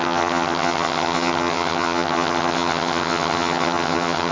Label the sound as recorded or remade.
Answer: remade